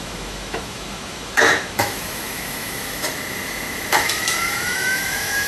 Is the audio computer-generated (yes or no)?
yes